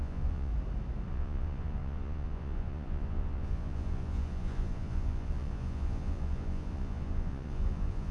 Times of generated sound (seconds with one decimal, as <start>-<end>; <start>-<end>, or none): 0.0-0.5; 1.1-8.1